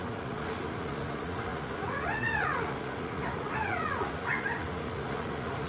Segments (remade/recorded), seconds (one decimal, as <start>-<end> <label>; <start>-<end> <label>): 0.0-5.7 remade